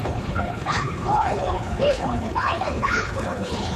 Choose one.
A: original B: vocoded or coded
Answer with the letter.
B